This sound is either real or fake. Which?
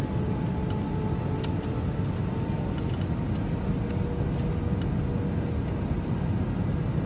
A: real